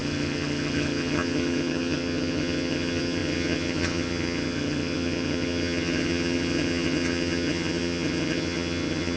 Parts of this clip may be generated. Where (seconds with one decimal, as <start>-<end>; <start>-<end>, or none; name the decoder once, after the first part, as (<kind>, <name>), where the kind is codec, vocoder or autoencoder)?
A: 0.0-9.2 (vocoder, HiFi-GAN)